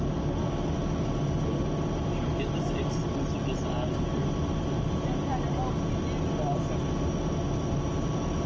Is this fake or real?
real